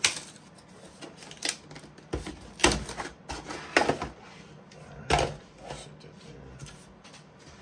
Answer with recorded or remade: recorded